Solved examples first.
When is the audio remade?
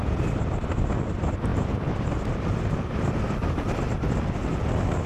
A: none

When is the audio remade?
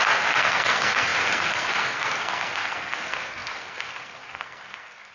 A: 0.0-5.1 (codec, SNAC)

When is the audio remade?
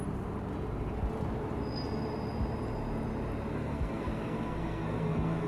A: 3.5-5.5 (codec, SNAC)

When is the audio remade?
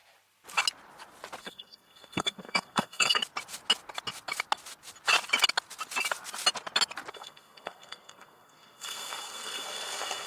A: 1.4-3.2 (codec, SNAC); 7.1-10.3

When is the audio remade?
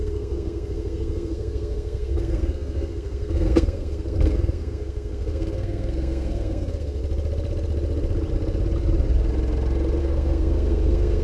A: 0.0-7.0 (codec, SNAC); 10.0-11.2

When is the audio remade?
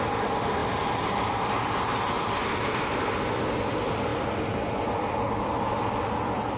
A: none